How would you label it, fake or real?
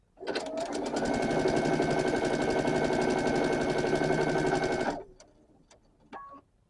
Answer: real